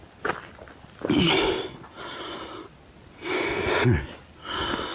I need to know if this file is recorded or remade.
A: recorded